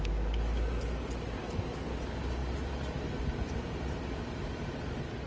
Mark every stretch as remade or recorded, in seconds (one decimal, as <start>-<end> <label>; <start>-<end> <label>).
0.0-5.3 recorded